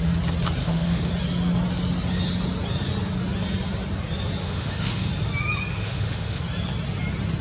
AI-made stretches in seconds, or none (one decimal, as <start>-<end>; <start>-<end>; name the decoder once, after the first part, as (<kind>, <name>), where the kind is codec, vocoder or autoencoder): 0.6-1.1 (autoencoder, DAC-VAE); 4.4-5.1; 5.7-6.4